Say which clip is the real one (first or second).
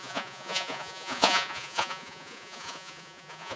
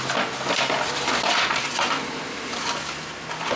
second